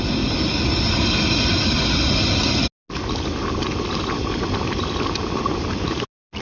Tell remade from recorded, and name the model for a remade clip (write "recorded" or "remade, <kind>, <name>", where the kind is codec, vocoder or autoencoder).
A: recorded